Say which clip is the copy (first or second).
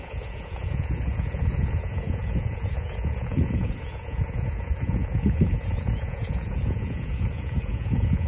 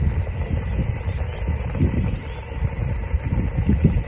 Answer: first